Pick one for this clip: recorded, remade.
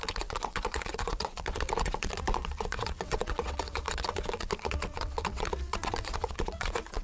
remade